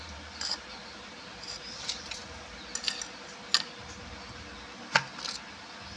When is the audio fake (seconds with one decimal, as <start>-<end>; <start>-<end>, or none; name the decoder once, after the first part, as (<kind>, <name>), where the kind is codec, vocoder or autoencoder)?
0.0-2.2 (vocoder, BigVGAN v2)

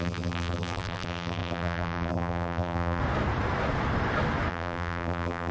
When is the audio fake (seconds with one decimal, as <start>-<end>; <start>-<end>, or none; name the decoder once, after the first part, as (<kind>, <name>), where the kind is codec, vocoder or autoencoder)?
0.0-3.0 (vocoder, BigVGAN v2); 4.5-5.5

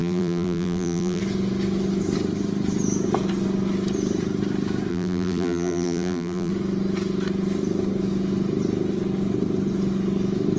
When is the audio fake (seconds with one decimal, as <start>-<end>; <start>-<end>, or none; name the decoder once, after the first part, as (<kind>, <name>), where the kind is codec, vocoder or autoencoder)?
0.0-1.2 (vocoder, BigVGAN v2); 4.9-6.5